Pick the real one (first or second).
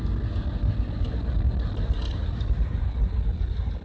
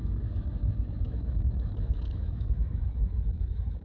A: first